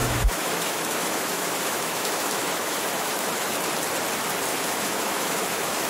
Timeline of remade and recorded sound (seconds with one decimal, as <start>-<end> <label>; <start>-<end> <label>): 0.0-3.5 remade; 3.5-4.5 recorded; 4.5-5.9 remade